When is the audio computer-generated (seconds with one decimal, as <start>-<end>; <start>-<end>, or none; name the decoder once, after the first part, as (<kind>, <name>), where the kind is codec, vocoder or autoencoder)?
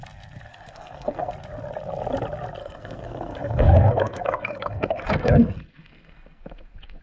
0.5-1.3 (codec, SNAC); 2.6-7.0